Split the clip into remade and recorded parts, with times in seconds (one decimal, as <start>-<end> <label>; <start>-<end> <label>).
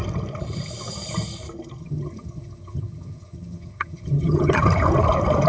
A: 0.0-1.8 recorded; 1.8-4.6 remade; 4.6-5.5 recorded